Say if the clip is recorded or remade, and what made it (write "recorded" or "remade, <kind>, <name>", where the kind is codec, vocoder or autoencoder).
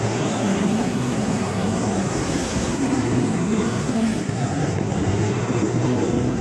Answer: remade, codec, SNAC